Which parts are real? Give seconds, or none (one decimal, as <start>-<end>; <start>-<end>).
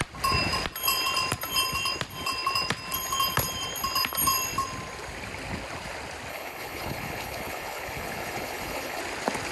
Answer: 0.0-6.3; 9.0-9.5